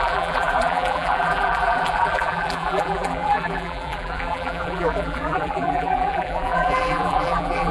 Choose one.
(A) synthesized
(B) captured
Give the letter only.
A